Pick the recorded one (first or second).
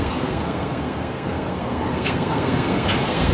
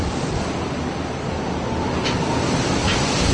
second